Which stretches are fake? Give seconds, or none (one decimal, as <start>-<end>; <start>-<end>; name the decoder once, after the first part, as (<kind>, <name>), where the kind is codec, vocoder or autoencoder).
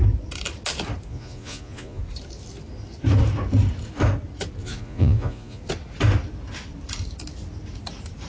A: 1.1-2.0 (vocoder, Vocos); 4.6-5.6